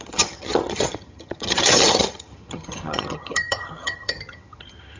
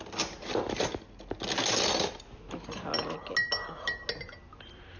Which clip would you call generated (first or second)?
first